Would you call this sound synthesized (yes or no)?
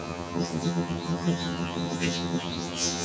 yes